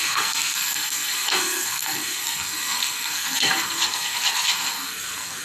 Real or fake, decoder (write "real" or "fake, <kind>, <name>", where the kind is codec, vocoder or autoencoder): fake, codec, SNAC